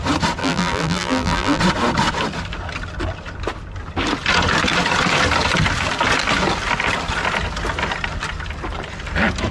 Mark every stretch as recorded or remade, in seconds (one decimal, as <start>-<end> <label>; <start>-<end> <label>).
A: 0.0-0.4 recorded; 0.4-1.6 remade; 1.6-9.5 recorded